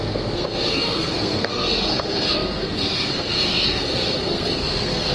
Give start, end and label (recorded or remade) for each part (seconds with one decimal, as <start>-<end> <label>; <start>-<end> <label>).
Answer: 0.0-5.1 remade